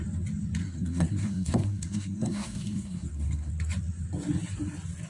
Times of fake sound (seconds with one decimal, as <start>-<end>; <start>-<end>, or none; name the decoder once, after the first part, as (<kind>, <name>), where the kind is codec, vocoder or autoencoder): 0.6-3.5 (codec, SNAC)